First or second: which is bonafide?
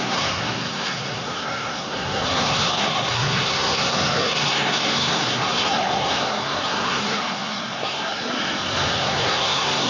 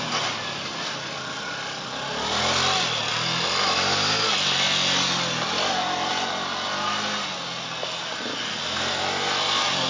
second